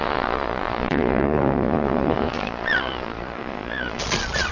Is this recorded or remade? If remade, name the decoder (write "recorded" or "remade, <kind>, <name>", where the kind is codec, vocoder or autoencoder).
remade, vocoder, Vocos